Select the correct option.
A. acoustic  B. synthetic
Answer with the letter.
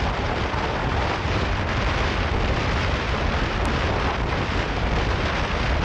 B